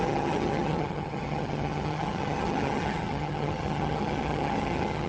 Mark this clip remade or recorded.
remade